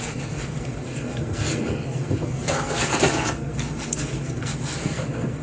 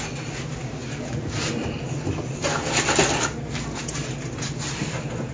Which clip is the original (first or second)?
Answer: second